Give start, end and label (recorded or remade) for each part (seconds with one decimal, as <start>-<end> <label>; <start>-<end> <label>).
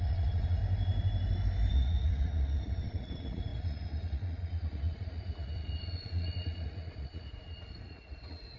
0.0-0.6 remade; 0.6-1.7 recorded; 1.7-8.6 remade